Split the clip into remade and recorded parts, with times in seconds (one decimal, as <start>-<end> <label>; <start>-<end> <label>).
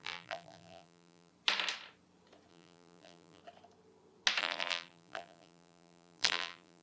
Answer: 0.0-1.3 remade; 1.3-2.5 recorded; 2.5-3.4 remade; 3.4-4.4 recorded; 4.4-6.8 remade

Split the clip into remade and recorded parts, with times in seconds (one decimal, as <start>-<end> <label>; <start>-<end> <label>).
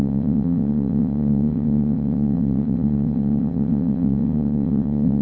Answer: 0.0-5.2 remade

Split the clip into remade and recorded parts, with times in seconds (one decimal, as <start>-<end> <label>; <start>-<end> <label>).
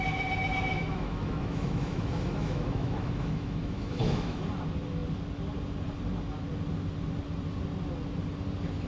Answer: 0.0-0.7 recorded; 0.7-4.4 remade; 4.4-8.9 recorded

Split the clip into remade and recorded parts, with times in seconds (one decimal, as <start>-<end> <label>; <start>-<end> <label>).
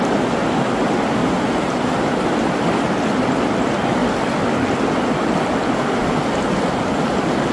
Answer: 0.0-1.2 recorded; 1.2-2.9 remade; 2.9-7.5 recorded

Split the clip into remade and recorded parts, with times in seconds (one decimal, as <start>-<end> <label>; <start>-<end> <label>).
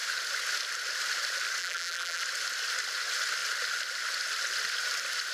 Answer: 0.0-1.6 recorded; 1.6-2.2 remade; 2.2-5.3 recorded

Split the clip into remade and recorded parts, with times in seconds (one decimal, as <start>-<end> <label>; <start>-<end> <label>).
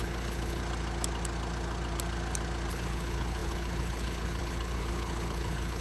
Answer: 0.0-0.6 remade; 0.6-2.7 recorded; 2.7-5.8 remade